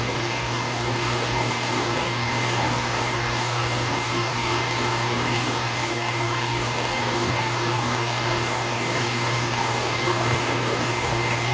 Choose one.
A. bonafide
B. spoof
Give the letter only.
B